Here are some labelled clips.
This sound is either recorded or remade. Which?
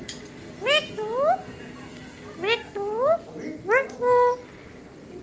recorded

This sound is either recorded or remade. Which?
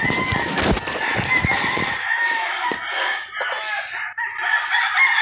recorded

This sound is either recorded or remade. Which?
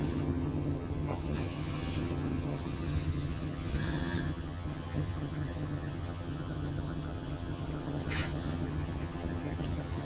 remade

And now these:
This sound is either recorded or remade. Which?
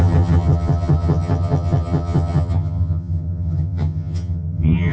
remade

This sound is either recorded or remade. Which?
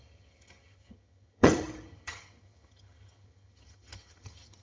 remade